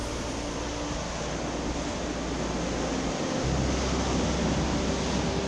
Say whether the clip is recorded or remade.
recorded